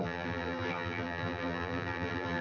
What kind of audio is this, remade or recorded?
remade